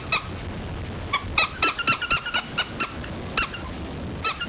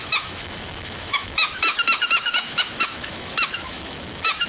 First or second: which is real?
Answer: first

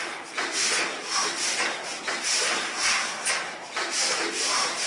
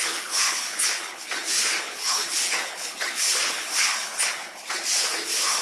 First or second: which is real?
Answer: first